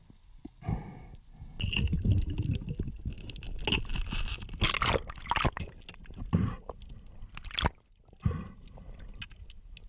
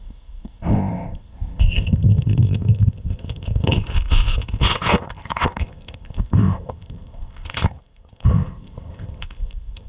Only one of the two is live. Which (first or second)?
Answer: first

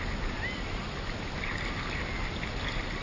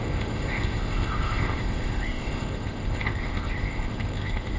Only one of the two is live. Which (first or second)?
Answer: first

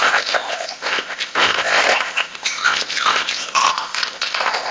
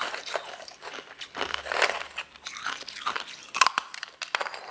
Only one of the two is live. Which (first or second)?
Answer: second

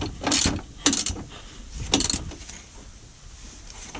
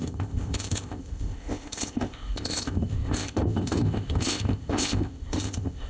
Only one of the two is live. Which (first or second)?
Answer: first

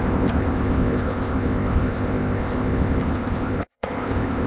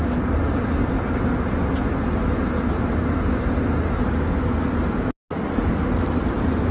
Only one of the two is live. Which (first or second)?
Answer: second